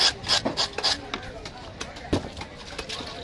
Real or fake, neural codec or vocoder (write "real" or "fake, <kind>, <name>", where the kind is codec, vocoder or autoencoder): real